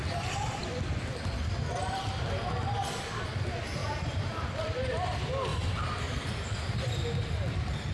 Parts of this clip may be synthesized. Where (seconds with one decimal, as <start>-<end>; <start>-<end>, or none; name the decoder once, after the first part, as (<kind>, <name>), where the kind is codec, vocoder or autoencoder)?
0.0-0.6 (vocoder, BigVGAN v2); 3.0-5.5; 6.1-7.9